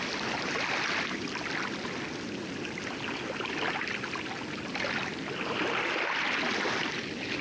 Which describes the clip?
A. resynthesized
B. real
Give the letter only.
B